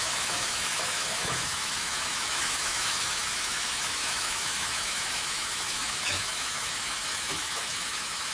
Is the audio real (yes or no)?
no